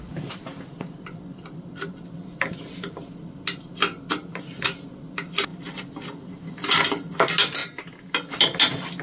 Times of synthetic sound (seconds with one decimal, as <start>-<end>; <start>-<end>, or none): none